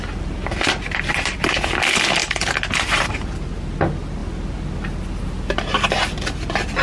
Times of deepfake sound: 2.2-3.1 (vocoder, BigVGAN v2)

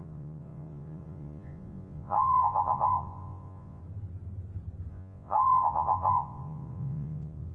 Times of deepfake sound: 0.0-3.8 (vocoder, Vocos); 4.9-7.5